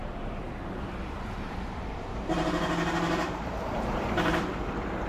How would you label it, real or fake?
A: fake